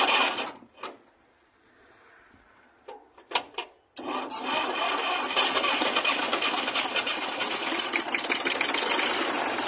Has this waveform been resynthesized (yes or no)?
no